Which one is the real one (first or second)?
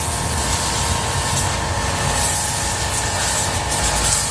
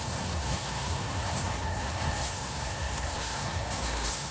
first